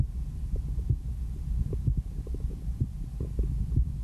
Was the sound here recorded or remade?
recorded